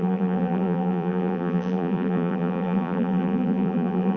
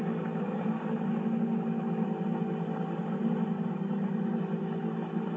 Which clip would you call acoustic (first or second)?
second